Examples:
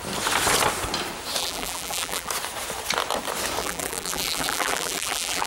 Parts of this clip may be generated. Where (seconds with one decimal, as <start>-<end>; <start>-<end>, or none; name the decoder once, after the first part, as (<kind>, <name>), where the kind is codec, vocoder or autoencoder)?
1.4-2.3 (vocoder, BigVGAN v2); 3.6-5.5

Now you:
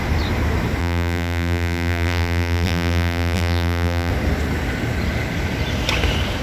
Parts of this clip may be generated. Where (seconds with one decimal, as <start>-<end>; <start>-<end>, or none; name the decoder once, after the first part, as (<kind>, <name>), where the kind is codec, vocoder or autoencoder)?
0.8-4.1 (vocoder, BigVGAN v2)

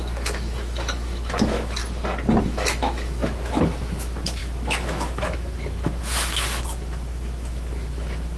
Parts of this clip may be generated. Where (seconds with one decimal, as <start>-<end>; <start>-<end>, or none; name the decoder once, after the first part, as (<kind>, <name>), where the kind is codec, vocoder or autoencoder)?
0.0-1.8 (autoencoder, DAC-VAE); 2.4-8.4

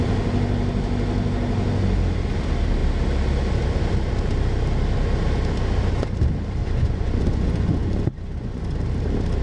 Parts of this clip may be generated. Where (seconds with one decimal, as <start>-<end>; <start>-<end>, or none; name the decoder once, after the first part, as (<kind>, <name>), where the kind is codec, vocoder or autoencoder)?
6.6-8.6 (vocoder, Vocos)